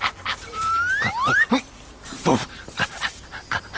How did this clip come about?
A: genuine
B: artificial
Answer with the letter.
B